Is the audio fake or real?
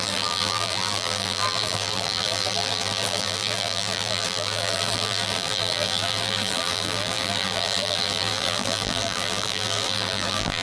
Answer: fake